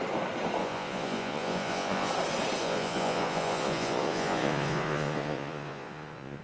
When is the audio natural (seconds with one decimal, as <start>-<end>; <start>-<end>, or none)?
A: 0.0-0.6; 2.1-2.6